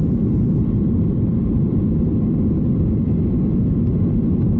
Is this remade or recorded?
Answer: recorded